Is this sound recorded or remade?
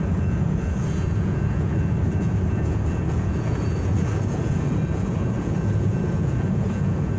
remade